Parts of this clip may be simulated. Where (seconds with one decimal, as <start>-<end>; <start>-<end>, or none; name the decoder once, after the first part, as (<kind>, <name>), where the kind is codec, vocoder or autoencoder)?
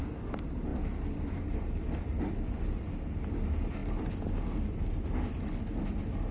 none